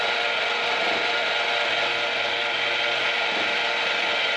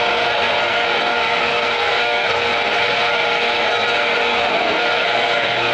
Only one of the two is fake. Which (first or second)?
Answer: second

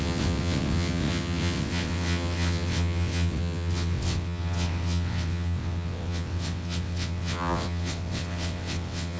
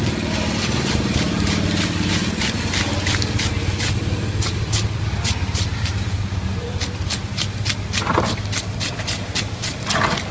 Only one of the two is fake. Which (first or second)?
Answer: first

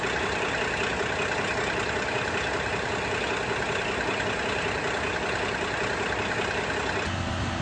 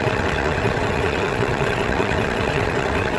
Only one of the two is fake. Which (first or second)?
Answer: second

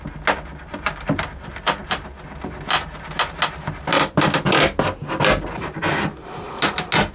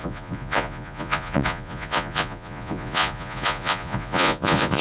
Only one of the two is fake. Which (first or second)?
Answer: second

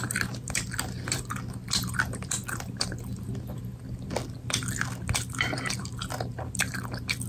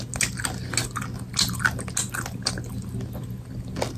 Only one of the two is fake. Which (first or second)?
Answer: first